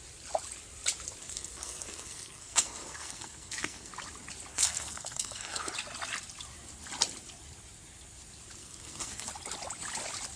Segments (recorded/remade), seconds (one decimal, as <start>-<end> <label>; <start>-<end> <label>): 0.0-1.2 recorded; 1.2-3.9 remade; 3.9-4.5 recorded; 4.5-5.7 remade; 5.7-8.6 recorded; 8.6-9.3 remade; 9.3-10.4 recorded